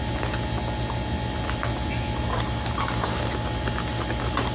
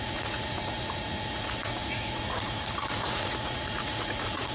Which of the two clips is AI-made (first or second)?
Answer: second